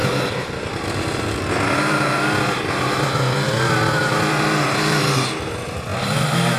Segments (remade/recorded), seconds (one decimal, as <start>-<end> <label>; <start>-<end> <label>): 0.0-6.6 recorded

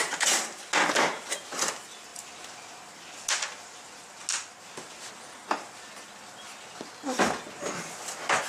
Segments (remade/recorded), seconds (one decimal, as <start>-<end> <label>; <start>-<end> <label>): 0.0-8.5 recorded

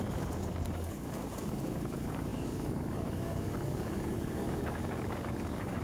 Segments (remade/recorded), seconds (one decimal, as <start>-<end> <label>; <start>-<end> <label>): 0.0-5.8 remade